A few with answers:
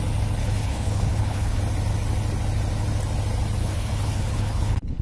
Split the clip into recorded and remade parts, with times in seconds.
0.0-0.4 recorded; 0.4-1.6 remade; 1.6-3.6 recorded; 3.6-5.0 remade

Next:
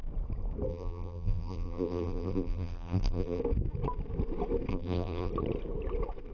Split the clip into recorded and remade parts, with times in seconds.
0.0-0.7 recorded; 0.7-3.4 remade; 3.4-4.7 recorded; 4.7-5.3 remade; 5.3-6.3 recorded

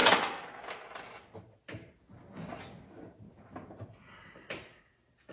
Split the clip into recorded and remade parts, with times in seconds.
0.0-5.3 recorded

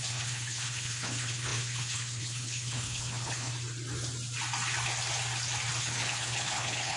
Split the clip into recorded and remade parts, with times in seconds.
0.0-3.5 remade; 3.5-5.8 recorded; 5.8-7.0 remade

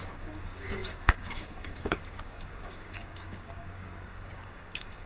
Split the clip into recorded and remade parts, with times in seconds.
0.0-5.1 remade